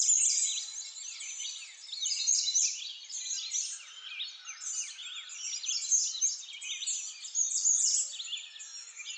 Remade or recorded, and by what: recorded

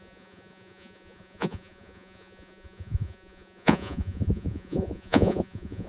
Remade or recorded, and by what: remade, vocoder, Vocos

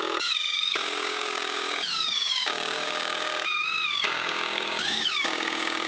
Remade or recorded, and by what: remade, codec, DAC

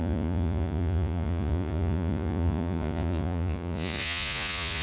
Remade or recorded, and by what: remade, vocoder, Vocos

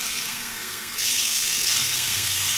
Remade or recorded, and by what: remade, codec, SNAC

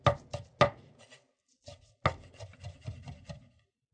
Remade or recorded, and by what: recorded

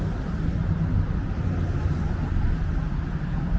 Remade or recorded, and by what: recorded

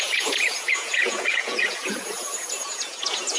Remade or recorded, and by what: remade, vocoder, Vocos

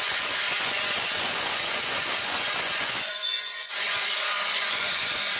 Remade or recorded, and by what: remade, vocoder, Vocos